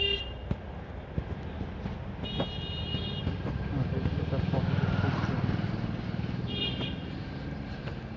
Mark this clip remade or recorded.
recorded